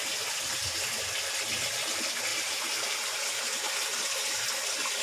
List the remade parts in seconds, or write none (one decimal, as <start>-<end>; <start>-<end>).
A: 2.3-3.2; 3.9-4.4